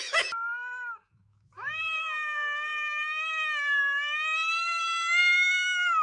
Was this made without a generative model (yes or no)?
no